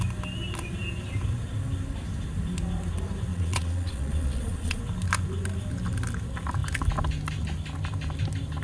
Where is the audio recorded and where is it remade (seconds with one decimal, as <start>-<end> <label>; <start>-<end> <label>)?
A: 0.0-3.3 recorded; 3.3-4.8 remade; 4.8-8.6 recorded